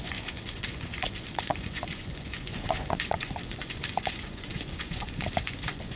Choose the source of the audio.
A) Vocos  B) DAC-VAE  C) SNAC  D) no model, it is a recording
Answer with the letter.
A